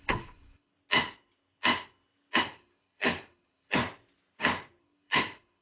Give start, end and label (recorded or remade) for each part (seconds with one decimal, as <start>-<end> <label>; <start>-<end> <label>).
0.0-0.7 remade; 0.7-2.4 recorded; 2.4-3.8 remade; 3.8-4.8 recorded; 4.8-5.6 remade